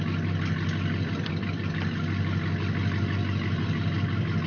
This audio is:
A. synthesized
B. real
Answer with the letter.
B